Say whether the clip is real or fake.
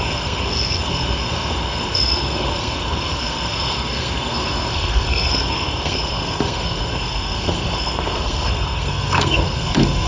fake